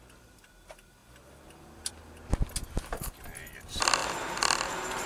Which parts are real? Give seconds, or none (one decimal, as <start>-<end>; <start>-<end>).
0.0-1.0; 2.0-4.0